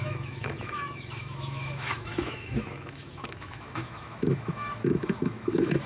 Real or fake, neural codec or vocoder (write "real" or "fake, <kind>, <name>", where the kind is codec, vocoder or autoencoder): fake, autoencoder, DAC-VAE